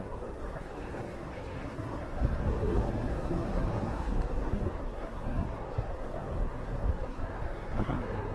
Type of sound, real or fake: fake